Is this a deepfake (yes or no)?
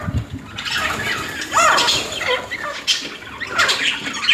no